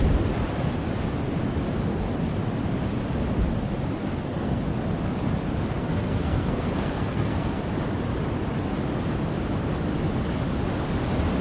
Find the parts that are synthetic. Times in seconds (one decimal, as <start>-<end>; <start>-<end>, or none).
4.0-4.6; 5.8-7.6